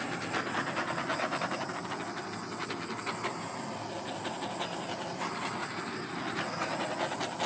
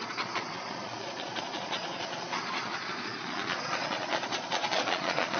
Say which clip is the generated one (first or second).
second